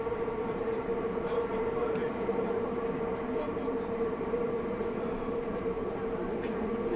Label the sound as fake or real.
fake